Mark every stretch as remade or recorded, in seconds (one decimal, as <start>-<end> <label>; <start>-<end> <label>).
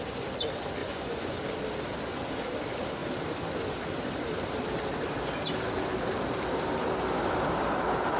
0.0-0.8 recorded; 0.8-1.4 remade; 1.4-8.2 recorded